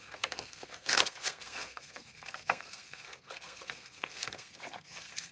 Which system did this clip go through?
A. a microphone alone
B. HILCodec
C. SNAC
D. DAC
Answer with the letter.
C